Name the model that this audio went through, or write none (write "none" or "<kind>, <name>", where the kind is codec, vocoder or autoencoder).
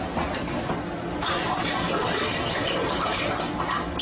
none